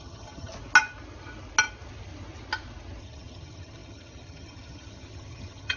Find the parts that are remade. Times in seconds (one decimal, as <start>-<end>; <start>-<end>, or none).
0.0-0.5; 3.0-5.8